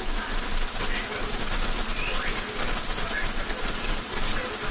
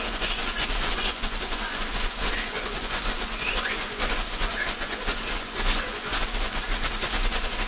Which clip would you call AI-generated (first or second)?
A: second